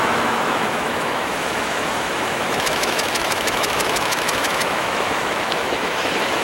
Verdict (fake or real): fake